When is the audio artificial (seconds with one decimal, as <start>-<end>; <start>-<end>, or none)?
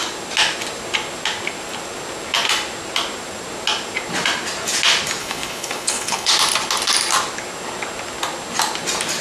5.2-6.3